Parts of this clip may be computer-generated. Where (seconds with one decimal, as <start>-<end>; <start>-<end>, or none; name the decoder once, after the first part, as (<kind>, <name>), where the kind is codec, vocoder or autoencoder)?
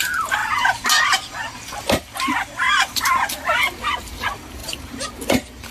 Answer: 0.0-0.4 (vocoder, BigVGAN v2); 3.8-5.7